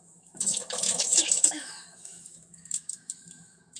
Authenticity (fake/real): fake